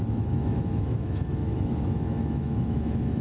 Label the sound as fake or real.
fake